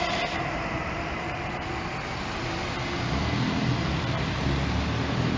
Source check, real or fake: real